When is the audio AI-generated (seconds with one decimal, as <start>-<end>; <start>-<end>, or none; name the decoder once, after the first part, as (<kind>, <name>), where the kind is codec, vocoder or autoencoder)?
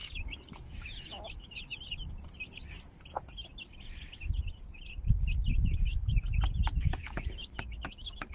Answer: 0.0-1.7 (autoencoder, DAC-VAE); 6.7-8.3